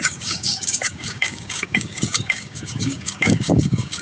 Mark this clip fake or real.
fake